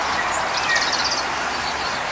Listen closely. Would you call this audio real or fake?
real